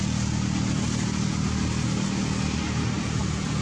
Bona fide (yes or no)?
yes